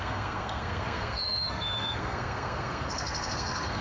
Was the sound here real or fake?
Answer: fake